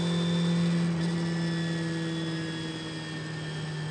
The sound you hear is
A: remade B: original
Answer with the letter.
B